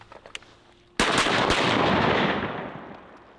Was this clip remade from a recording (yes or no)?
no